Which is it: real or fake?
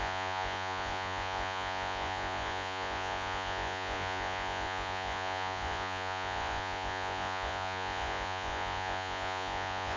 fake